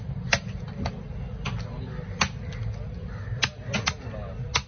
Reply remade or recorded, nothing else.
recorded